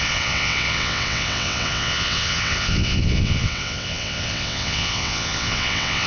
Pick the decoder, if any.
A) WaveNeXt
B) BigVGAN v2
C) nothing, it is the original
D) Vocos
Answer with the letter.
A